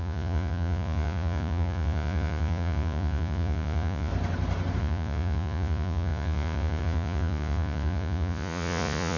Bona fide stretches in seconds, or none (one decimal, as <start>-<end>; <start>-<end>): 4.1-4.8